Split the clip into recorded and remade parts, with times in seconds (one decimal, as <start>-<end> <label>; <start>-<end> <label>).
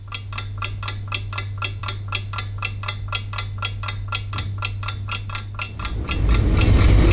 0.0-7.1 recorded